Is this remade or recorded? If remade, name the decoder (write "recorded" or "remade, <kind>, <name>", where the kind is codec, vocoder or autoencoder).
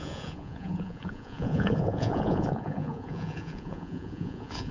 remade, vocoder, Vocos